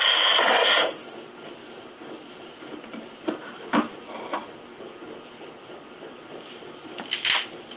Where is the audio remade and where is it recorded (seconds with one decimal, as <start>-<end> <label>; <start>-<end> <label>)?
0.0-1.6 recorded; 1.6-4.1 remade; 4.1-7.8 recorded